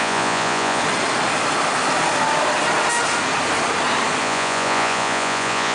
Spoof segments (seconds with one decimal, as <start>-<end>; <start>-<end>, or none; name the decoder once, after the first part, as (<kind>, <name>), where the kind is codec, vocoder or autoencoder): 0.0-0.8 (vocoder, Vocos); 4.2-5.7